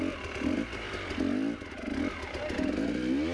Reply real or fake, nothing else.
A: real